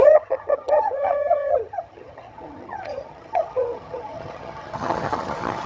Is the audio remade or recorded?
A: remade